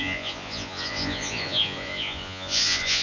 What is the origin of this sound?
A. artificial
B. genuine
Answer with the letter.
A